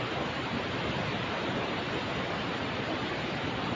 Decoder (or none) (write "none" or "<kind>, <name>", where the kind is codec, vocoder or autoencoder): none